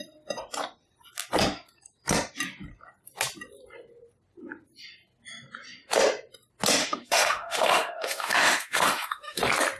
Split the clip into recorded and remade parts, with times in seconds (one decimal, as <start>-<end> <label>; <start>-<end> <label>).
0.0-6.8 recorded; 6.8-9.4 remade; 9.4-9.8 recorded